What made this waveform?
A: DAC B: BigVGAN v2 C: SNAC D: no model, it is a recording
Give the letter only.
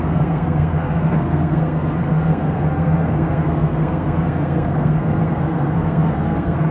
C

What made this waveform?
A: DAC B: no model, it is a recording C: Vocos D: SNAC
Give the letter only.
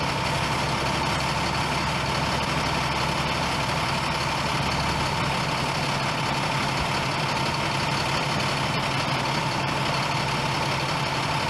B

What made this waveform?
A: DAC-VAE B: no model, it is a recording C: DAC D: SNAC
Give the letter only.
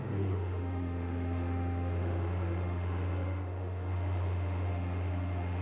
A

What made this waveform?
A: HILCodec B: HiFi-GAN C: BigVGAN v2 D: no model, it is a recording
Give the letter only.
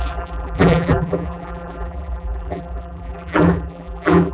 C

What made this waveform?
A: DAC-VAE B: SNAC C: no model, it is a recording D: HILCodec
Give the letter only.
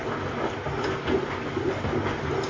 C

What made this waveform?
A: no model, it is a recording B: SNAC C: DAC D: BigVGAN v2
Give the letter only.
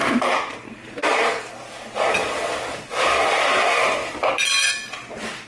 A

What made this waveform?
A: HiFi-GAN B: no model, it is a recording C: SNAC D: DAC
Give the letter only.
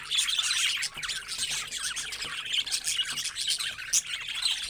B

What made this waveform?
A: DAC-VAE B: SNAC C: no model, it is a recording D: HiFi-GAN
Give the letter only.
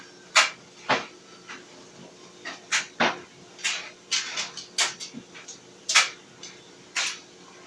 C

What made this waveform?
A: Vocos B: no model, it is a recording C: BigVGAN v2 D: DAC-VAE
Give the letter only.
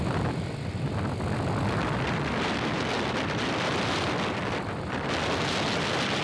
C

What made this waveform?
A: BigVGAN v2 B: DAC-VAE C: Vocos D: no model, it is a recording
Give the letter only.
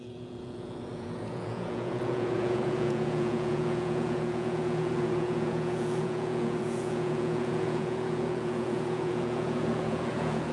C